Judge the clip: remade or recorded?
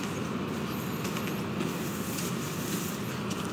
recorded